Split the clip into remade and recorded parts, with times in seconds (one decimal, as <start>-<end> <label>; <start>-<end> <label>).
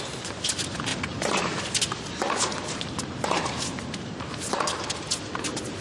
0.0-5.8 recorded